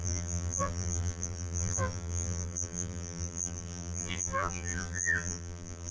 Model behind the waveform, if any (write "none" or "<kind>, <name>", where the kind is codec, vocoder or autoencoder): vocoder, BigVGAN v2